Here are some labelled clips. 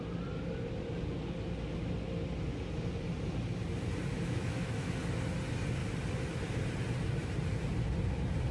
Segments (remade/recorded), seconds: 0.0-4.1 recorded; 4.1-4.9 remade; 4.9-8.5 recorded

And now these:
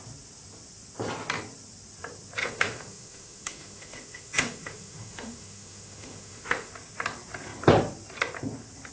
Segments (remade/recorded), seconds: 0.0-2.4 recorded; 2.4-6.7 remade; 6.7-8.9 recorded

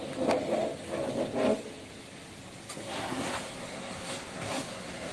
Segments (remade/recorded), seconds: 0.0-2.8 recorded; 2.8-5.1 remade

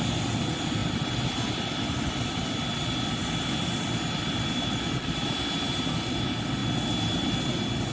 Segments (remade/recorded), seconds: 0.0-7.9 recorded

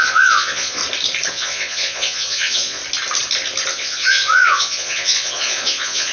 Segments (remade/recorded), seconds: 0.0-0.8 remade; 0.8-1.3 recorded; 1.3-2.8 remade; 2.8-3.7 recorded; 3.7-6.1 remade

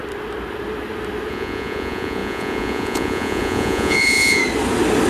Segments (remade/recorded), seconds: 0.0-1.3 recorded; 1.3-4.4 remade; 4.4-5.1 recorded

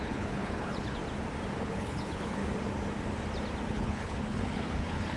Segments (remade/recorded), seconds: 0.0-1.0 remade; 1.0-1.6 recorded; 1.6-2.4 remade; 2.4-3.7 recorded; 3.7-5.2 remade

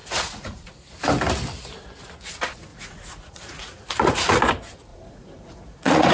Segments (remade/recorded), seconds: 0.0-0.7 remade; 0.7-2.7 recorded; 2.7-4.4 remade; 4.4-4.9 recorded; 4.9-6.1 remade